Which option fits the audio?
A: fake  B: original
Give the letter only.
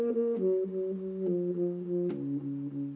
B